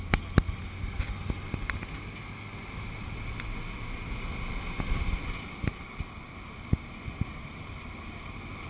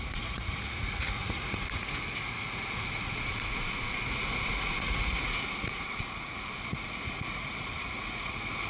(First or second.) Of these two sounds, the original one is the first